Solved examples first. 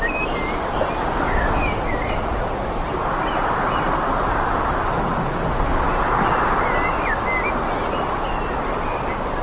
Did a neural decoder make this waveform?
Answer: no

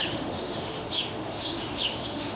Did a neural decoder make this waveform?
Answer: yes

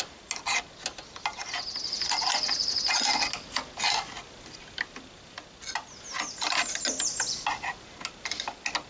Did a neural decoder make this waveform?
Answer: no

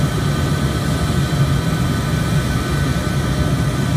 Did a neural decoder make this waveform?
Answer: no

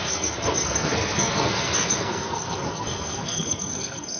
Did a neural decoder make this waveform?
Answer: yes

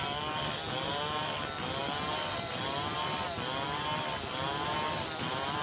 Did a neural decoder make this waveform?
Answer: no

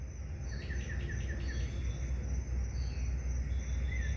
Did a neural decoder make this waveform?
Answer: no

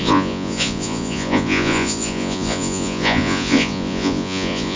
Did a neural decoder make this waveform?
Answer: yes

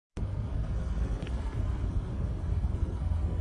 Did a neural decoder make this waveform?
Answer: yes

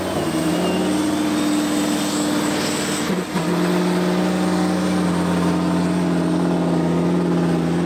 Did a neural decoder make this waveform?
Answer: no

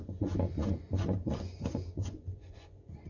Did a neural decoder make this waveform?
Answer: yes